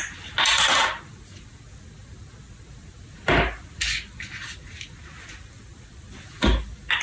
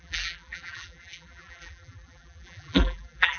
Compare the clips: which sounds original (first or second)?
first